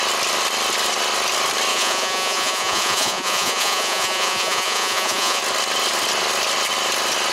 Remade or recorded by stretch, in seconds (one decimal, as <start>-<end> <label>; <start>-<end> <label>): 0.0-1.7 recorded; 1.7-5.4 remade; 5.4-7.3 recorded